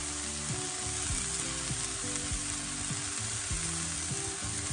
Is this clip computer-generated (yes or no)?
no